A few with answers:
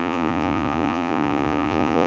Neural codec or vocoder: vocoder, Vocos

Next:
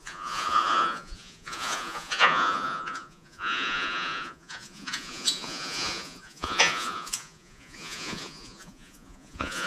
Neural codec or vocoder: vocoder, Vocos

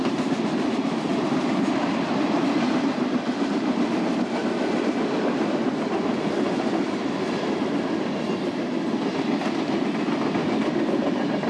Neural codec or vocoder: none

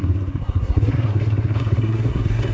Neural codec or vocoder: codec, SNAC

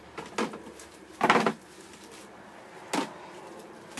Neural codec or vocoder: none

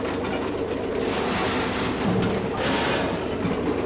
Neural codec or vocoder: none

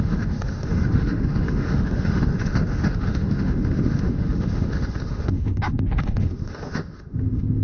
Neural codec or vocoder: autoencoder, DAC-VAE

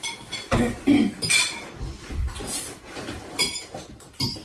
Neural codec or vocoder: vocoder, BigVGAN v2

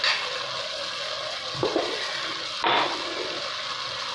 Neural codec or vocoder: none